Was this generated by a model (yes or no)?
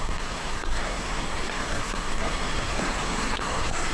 yes